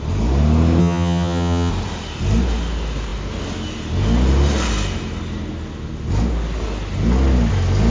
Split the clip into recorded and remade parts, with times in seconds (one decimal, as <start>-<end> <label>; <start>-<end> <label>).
0.0-0.8 recorded; 0.8-1.7 remade; 1.7-7.9 recorded